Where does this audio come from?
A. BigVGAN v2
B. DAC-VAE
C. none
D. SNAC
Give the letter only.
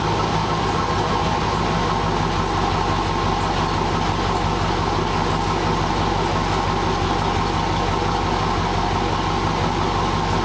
C